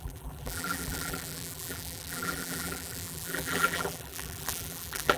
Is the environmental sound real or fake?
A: fake